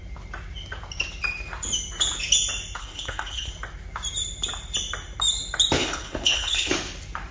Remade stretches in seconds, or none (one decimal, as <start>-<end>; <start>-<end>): 2.8-3.5; 5.8-6.7